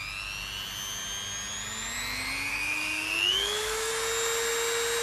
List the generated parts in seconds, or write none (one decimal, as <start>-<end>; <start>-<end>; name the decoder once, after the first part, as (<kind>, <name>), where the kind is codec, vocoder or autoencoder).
2.5-3.9 (codec, DAC)